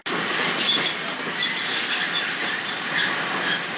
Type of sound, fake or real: real